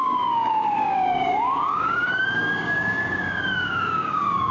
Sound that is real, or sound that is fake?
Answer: fake